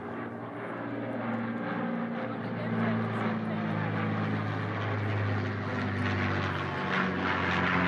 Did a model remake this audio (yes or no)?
no